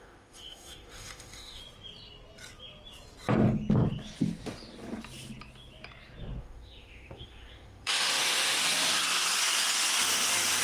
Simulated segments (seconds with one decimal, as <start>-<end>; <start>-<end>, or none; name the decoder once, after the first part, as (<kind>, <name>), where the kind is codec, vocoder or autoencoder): 0.0-1.6 (autoencoder, DAC-VAE); 6.4-8.6